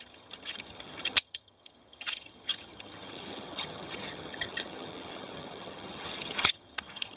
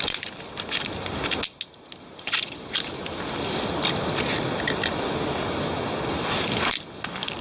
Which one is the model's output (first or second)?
first